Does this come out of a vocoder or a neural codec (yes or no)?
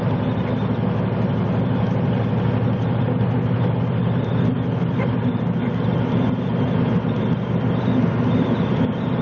no